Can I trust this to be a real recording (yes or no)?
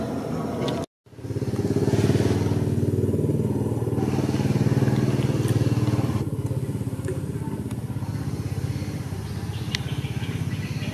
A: yes